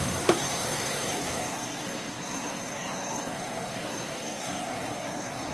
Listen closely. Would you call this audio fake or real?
fake